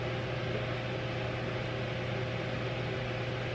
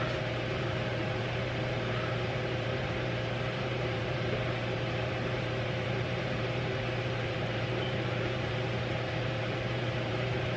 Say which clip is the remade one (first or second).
second